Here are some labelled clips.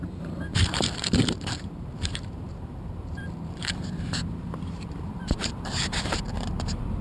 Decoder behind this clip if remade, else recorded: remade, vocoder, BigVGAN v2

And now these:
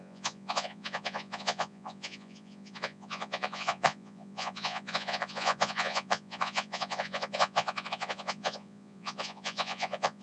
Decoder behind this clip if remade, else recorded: remade, vocoder, Vocos